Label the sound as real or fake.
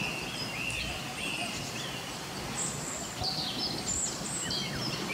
real